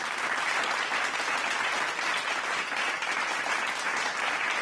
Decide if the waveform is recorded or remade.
recorded